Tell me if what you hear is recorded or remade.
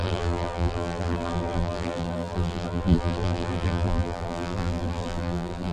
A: remade